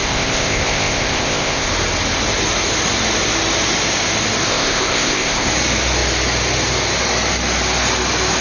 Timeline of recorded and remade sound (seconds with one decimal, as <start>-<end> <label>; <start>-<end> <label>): 0.0-1.7 remade; 1.7-4.5 recorded; 4.5-5.5 remade; 5.5-8.4 recorded